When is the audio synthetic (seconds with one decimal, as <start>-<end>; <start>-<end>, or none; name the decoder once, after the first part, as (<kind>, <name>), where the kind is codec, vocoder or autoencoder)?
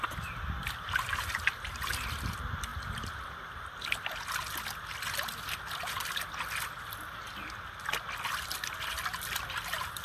none